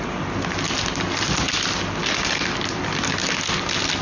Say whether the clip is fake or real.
real